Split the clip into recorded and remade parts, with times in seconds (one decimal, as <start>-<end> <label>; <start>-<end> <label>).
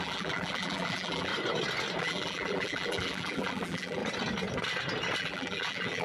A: 0.0-1.3 remade; 1.3-2.0 recorded; 2.0-4.0 remade; 4.0-5.2 recorded; 5.2-6.0 remade